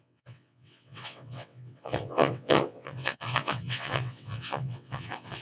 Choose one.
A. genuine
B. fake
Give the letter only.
B